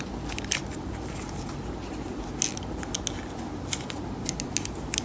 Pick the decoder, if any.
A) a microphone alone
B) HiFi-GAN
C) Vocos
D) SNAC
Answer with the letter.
A